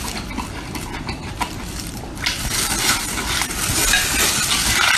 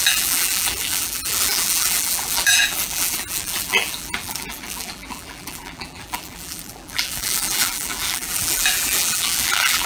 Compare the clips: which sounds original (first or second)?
first